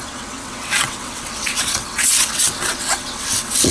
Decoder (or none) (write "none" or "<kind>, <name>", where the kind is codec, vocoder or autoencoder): vocoder, WaveNeXt